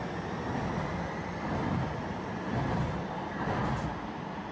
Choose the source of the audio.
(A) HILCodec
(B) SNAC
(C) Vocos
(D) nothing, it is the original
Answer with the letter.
D